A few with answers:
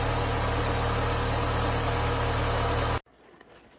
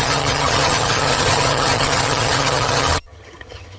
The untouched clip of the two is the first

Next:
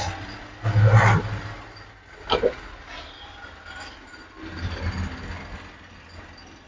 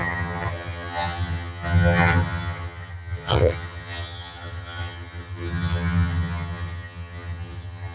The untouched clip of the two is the first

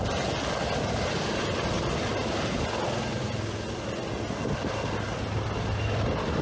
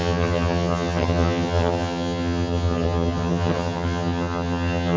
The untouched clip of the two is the first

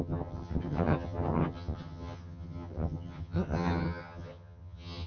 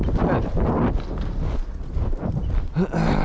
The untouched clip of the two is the second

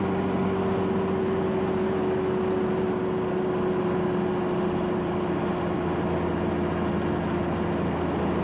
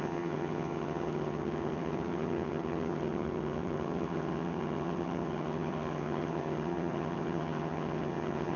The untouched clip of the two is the first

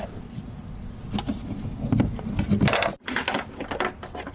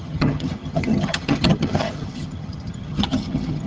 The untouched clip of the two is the first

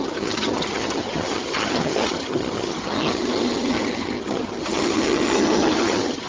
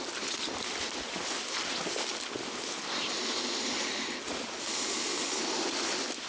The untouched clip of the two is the second